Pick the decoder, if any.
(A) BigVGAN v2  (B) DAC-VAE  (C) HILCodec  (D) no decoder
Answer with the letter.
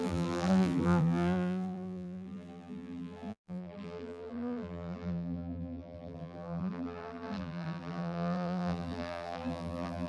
A